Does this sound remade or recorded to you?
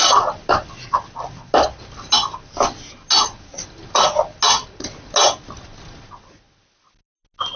recorded